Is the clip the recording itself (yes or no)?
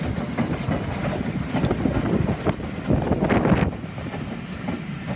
yes